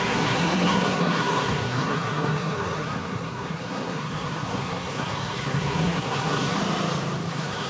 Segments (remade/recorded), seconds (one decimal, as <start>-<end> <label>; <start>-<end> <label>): 0.0-6.6 remade; 6.6-7.3 recorded; 7.3-7.7 remade